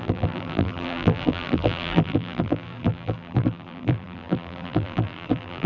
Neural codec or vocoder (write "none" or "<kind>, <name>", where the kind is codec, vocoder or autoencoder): vocoder, BigVGAN v2